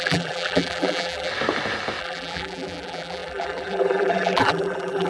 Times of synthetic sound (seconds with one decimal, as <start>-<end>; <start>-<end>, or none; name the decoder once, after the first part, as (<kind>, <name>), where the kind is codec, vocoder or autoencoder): 0.0-1.3 (vocoder, BigVGAN v2); 2.0-5.1